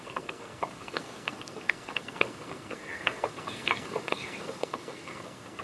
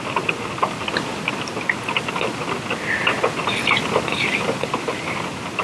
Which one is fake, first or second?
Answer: first